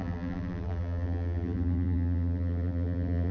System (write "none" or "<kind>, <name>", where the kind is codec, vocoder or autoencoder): vocoder, BigVGAN v2